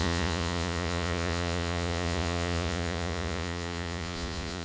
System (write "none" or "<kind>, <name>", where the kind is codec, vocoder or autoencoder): vocoder, Vocos